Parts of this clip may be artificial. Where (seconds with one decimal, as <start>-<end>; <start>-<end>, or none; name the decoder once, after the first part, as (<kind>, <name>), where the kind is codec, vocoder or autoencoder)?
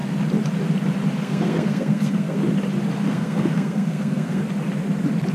1.2-2.4 (codec, SNAC); 3.1-4.4